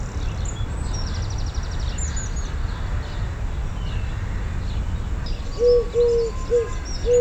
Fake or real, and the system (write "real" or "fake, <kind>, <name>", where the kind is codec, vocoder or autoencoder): real